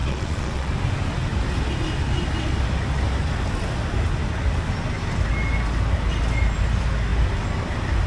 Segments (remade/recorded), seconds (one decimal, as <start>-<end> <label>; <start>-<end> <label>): 0.0-0.7 remade; 0.7-8.1 recorded